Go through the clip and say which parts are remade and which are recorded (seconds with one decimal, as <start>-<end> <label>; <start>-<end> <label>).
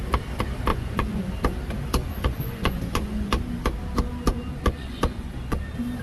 0.0-0.7 recorded; 0.7-1.3 remade; 1.3-2.0 recorded; 2.0-3.3 remade; 3.3-4.3 recorded; 4.3-5.6 remade; 5.6-6.0 recorded